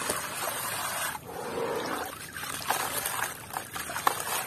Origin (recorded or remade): recorded